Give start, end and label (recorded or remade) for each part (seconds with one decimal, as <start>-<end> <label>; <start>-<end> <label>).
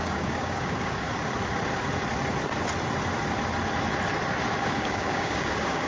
0.0-1.1 remade; 1.1-4.6 recorded; 4.6-5.9 remade